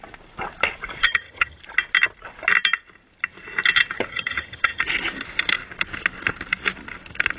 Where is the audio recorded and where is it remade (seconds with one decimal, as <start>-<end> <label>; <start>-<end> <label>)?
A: 0.0-1.0 recorded; 1.0-1.6 remade; 1.6-4.1 recorded; 4.1-4.8 remade; 4.8-7.4 recorded